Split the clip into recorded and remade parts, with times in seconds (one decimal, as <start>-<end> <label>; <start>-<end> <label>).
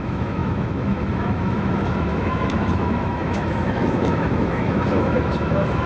0.0-5.9 remade